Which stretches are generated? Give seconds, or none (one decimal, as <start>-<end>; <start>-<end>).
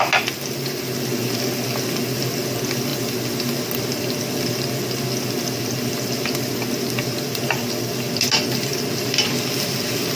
none